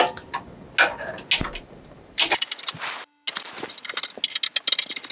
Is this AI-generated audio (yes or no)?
no